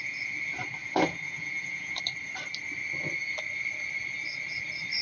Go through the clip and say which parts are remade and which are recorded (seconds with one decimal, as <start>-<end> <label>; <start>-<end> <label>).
0.0-0.8 recorded; 0.8-2.0 remade; 2.0-5.0 recorded